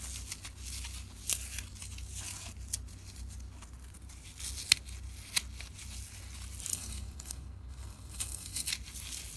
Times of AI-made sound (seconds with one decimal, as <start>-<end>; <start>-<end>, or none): 6.7-8.7